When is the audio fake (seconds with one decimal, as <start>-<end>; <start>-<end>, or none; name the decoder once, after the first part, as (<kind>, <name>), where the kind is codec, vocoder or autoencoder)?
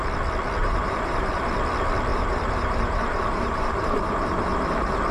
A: 0.6-1.5 (vocoder, BigVGAN v2); 2.1-5.1